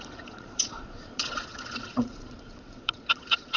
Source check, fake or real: fake